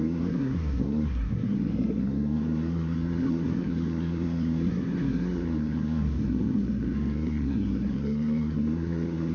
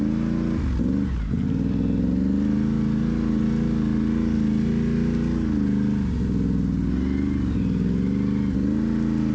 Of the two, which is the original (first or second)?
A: second